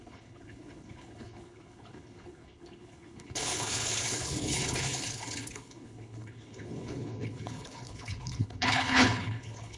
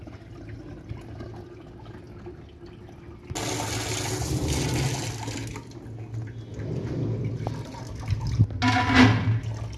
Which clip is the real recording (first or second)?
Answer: second